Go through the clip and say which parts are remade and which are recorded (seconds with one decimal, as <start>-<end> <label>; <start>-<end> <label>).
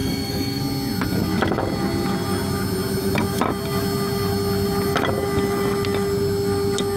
0.0-0.6 remade; 0.6-7.0 recorded